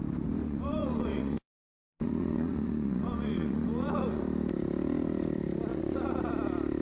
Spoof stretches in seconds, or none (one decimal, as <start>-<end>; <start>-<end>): 0.4-4.2; 5.7-6.3